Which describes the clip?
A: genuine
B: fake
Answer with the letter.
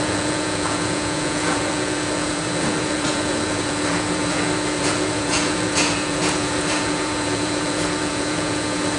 B